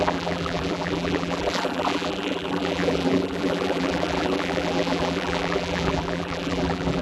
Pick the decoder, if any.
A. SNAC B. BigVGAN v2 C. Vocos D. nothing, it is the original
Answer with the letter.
B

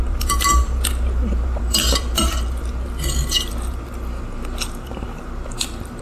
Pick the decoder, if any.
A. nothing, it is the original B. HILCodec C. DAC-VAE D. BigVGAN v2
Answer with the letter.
D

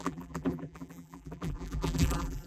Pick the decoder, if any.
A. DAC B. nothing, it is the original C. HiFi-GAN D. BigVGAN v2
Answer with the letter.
D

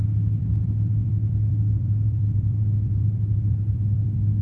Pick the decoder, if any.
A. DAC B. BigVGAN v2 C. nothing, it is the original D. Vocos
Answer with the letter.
B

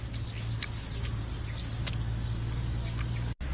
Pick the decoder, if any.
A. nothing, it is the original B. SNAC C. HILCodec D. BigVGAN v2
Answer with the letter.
A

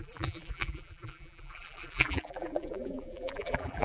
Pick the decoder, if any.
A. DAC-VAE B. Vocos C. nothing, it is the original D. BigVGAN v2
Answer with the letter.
D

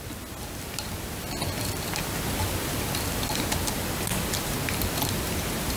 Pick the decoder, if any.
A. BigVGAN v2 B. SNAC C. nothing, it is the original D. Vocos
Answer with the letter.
C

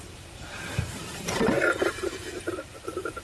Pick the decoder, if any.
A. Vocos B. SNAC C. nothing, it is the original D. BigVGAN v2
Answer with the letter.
D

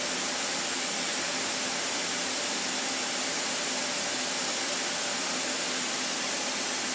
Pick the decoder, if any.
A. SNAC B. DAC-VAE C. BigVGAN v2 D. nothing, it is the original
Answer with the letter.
D